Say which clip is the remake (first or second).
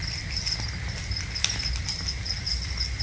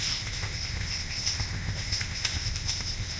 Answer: second